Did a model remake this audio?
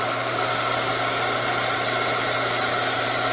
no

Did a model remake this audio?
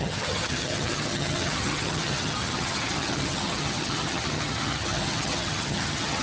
yes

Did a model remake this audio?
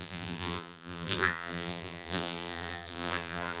yes